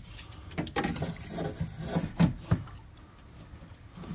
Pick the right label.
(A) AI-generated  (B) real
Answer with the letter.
B